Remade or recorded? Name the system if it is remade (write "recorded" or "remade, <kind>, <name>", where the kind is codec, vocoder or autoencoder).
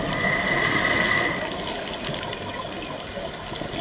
recorded